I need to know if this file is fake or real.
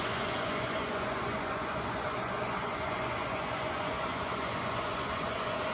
fake